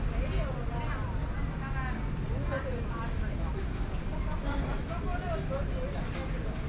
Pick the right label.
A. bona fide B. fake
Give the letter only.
A